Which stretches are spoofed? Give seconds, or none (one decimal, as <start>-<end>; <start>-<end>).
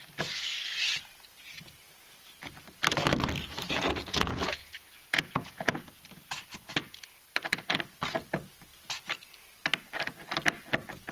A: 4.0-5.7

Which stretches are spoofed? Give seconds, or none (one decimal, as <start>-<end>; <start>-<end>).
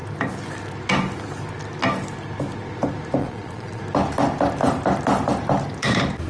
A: 3.2-3.8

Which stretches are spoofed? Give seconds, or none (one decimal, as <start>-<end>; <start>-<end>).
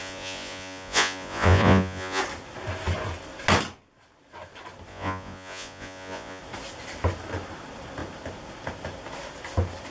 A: 0.0-2.2; 4.9-6.4